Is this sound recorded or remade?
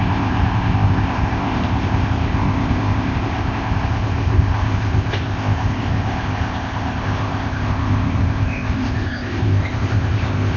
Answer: remade